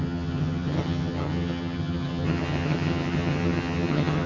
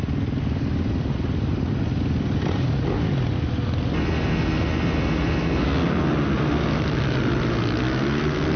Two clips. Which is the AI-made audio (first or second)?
first